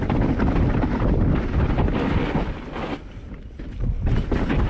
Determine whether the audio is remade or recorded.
recorded